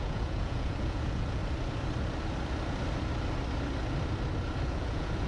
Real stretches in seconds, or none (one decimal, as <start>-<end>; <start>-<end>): 1.4-4.6